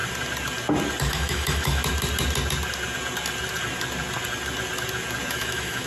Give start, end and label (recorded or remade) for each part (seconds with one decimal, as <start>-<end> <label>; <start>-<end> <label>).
0.0-1.1 recorded; 1.1-1.8 remade; 1.8-5.3 recorded; 5.3-5.9 remade